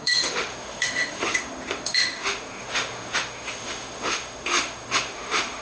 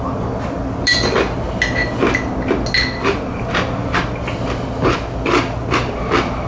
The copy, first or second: first